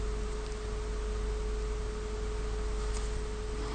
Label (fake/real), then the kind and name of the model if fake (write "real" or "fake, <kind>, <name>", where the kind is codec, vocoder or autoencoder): real